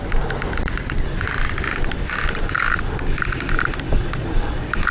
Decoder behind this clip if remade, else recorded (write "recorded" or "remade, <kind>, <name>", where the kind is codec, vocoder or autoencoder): recorded